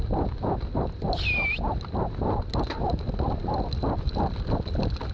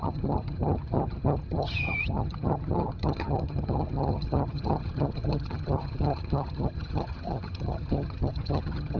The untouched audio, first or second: first